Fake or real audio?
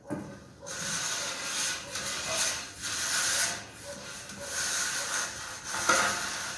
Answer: real